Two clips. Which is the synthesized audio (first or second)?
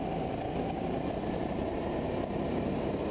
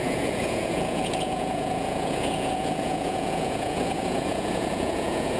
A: second